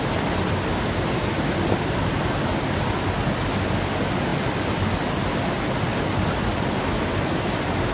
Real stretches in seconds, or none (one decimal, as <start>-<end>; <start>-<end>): 0.0-0.7; 2.5-4.3; 6.8-7.9